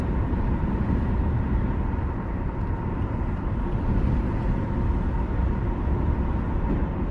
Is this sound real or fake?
real